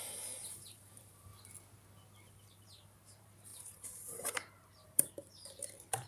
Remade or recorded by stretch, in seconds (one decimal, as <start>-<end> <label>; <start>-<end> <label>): 0.0-1.3 remade; 1.3-2.3 recorded; 2.3-6.1 remade